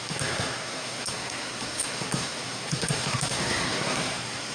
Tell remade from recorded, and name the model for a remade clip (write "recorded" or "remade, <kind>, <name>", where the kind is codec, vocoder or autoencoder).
remade, codec, SNAC